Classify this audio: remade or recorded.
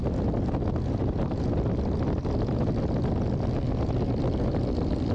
recorded